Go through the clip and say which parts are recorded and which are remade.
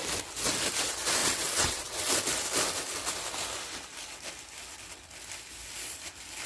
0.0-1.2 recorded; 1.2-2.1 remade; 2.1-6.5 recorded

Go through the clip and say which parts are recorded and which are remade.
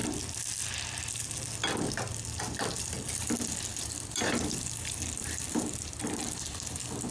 0.0-2.4 recorded; 2.4-7.1 remade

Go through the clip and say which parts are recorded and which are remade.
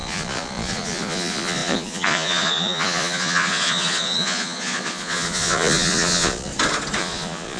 0.0-6.5 remade; 6.5-7.0 recorded; 7.0-7.6 remade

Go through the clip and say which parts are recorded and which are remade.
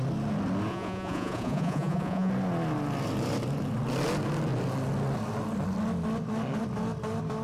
0.0-0.7 recorded; 0.7-2.3 remade; 2.3-7.4 recorded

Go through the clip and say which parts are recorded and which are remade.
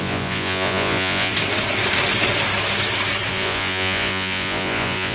0.0-1.3 remade; 1.3-3.3 recorded; 3.3-5.1 remade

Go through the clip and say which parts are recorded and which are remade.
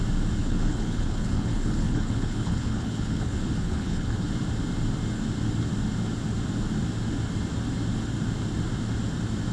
0.0-0.4 recorded; 0.4-4.3 remade; 4.3-9.5 recorded